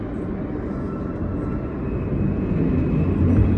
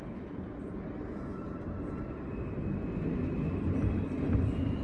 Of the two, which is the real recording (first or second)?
first